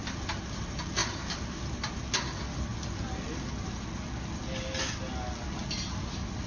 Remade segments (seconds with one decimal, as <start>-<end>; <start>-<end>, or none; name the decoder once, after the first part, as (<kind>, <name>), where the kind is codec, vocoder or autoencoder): none

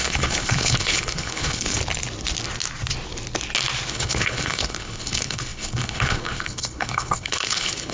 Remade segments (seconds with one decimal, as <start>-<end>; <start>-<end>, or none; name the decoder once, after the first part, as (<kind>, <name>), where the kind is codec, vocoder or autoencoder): 0.0-1.8 (codec, HILCodec); 3.9-7.9

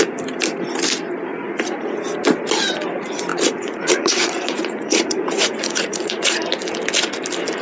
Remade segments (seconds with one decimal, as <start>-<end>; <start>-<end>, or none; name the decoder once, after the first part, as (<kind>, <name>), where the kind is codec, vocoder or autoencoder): 1.3-2.0 (vocoder, Vocos); 3.3-6.4